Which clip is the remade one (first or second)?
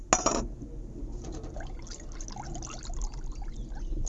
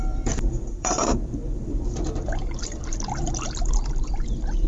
second